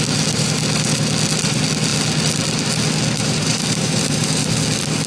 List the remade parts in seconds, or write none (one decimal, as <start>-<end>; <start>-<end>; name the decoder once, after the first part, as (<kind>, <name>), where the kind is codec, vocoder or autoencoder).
3.2-4.5 (vocoder, BigVGAN v2)